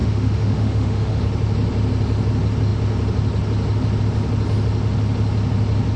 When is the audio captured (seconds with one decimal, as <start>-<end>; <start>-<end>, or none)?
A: 1.2-6.0